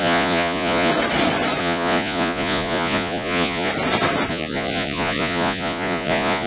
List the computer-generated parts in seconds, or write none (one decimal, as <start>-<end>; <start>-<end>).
0.0-0.9; 1.6-3.7; 4.3-6.5